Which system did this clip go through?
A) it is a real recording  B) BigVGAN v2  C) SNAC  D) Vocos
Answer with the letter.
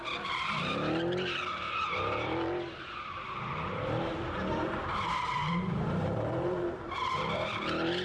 B